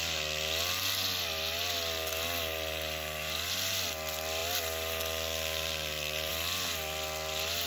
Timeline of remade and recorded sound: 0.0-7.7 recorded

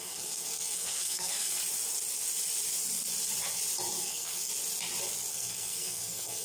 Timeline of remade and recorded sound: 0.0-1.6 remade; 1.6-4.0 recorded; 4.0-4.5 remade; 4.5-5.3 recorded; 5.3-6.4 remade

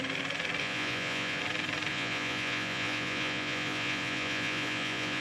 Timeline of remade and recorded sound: 0.0-0.6 recorded; 0.6-1.4 remade; 1.4-1.9 recorded; 1.9-5.2 remade

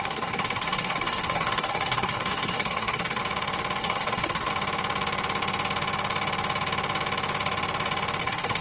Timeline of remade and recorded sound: 0.0-3.2 remade; 3.2-3.8 recorded; 3.8-4.5 remade; 4.5-8.2 recorded; 8.2-8.6 remade

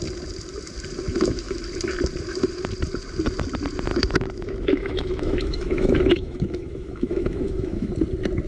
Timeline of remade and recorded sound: 0.0-1.1 recorded; 1.1-1.6 remade; 1.6-3.9 recorded; 3.9-7.9 remade; 7.9-8.5 recorded

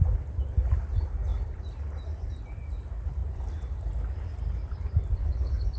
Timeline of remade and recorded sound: 0.0-5.2 recorded; 5.2-5.8 remade